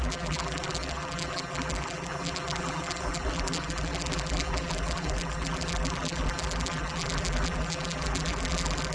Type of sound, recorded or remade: remade